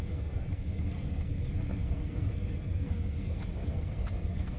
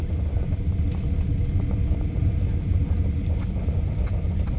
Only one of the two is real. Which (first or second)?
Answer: second